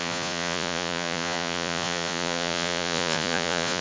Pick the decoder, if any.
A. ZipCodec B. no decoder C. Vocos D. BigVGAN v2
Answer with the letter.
C